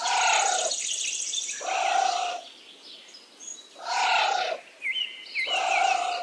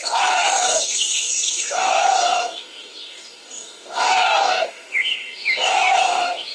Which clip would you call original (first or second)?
first